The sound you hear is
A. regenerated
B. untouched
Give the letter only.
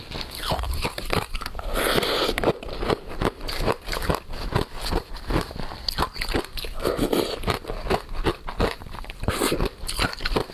B